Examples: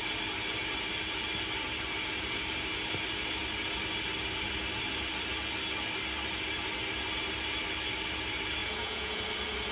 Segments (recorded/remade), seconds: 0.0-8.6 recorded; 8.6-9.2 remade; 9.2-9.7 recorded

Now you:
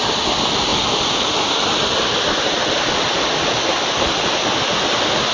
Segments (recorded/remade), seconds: 0.0-5.3 recorded